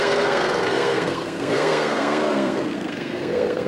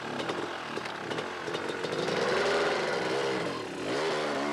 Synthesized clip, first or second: first